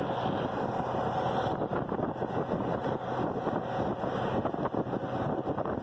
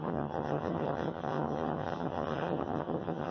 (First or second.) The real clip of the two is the first